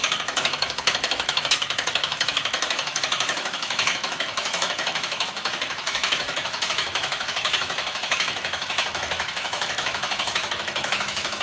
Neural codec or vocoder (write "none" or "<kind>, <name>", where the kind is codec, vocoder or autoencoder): autoencoder, DAC-VAE